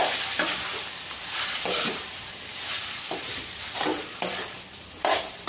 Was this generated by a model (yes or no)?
no